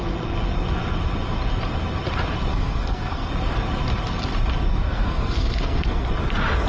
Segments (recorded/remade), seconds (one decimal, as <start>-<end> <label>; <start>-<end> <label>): 0.0-2.5 recorded; 2.5-3.3 remade; 3.3-4.7 recorded; 4.7-6.1 remade; 6.1-6.7 recorded